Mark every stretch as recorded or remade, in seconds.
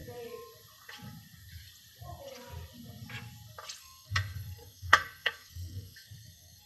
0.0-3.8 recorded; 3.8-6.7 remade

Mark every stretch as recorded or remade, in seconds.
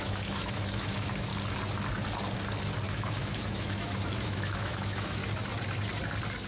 0.0-1.3 remade; 1.3-2.9 recorded; 2.9-5.2 remade; 5.2-6.5 recorded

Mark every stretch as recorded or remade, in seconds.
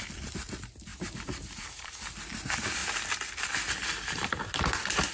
0.0-0.9 recorded; 0.9-2.1 remade; 2.1-5.1 recorded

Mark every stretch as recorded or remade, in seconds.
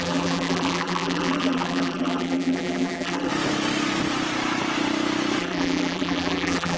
0.0-3.3 remade; 3.3-5.4 recorded; 5.4-6.8 remade